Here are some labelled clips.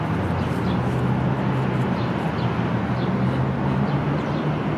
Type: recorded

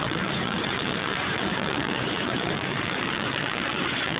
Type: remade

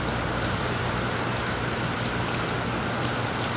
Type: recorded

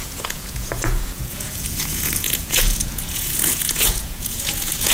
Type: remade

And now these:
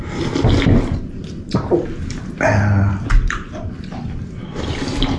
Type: recorded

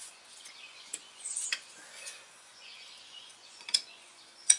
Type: remade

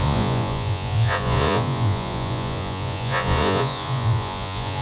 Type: remade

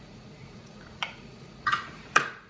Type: remade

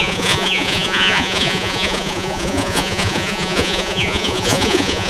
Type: remade